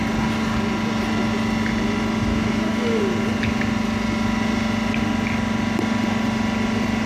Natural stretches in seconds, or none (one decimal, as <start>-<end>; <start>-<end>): 0.0-2.3; 3.0-7.1